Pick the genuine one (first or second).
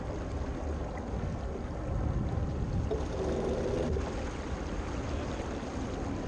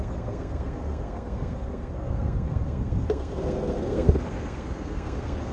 first